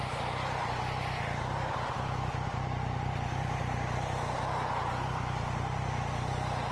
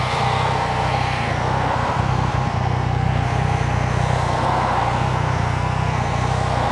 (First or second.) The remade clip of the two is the second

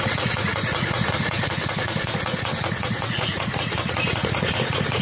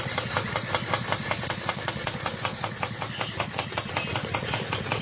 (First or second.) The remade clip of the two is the first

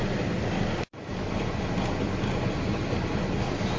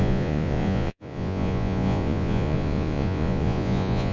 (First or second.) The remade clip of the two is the second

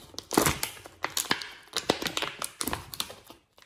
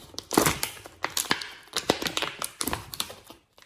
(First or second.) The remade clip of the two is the second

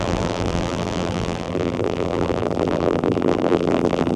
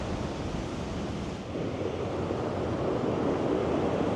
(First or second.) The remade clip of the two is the first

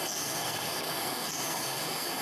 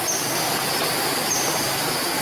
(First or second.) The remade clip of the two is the first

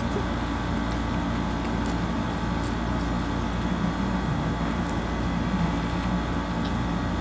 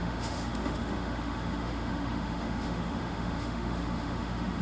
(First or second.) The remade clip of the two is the second